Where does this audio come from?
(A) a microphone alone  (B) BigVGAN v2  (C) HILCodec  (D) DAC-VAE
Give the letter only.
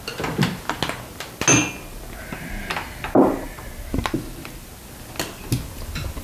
A